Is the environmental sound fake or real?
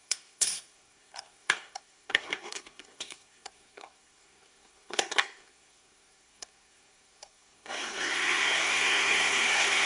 fake